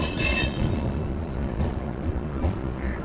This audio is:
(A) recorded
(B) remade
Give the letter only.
B